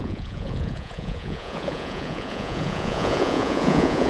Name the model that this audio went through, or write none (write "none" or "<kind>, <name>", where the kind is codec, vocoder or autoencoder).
vocoder, Vocos